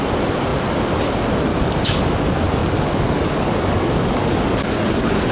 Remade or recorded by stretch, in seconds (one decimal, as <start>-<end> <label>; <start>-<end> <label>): 0.0-1.5 recorded; 1.5-2.0 remade; 2.0-2.6 recorded; 2.6-5.3 remade